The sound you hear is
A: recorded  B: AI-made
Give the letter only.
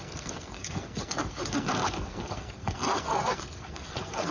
B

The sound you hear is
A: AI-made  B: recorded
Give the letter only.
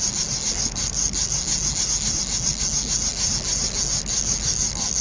B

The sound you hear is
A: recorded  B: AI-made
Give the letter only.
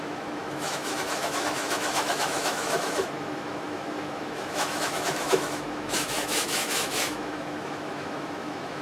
B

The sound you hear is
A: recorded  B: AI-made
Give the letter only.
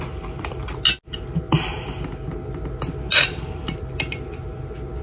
A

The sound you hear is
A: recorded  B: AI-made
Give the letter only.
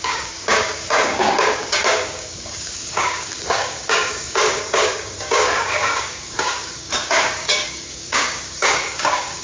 B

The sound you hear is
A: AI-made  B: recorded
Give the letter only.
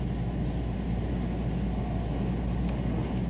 B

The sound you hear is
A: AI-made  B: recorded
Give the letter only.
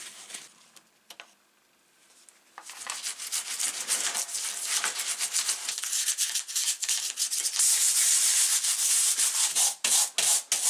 B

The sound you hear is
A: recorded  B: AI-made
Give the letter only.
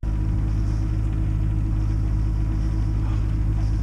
A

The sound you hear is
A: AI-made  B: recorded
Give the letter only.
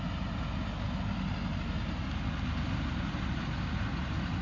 B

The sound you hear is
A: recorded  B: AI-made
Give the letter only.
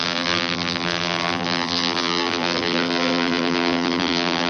B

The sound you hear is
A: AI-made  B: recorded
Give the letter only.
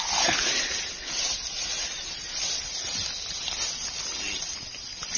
B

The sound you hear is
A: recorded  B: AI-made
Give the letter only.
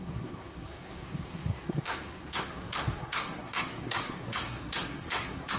B